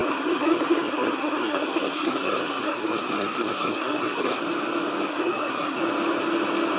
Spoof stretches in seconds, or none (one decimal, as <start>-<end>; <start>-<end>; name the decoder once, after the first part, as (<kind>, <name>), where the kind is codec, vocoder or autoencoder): 0.0-4.4 (codec, SNAC); 5.0-5.8